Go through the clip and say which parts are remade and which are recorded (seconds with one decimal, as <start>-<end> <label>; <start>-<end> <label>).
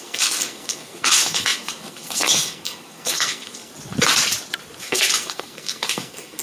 0.0-3.7 remade; 3.7-4.8 recorded; 4.8-6.4 remade